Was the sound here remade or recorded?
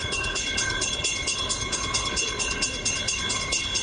remade